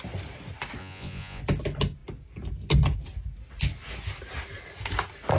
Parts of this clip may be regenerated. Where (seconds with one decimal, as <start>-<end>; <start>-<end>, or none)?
0.8-1.4